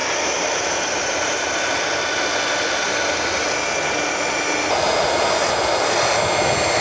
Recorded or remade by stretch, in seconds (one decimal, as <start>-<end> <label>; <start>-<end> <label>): 0.0-1.5 remade; 1.5-6.8 recorded